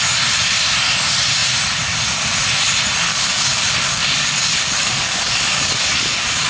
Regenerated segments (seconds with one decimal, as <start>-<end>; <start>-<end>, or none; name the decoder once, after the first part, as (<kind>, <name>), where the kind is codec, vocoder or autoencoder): 3.1-6.5 (codec, DAC)